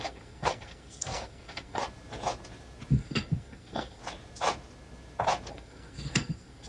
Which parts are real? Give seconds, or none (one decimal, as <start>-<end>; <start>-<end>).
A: 1.8-2.9; 4.0-5.5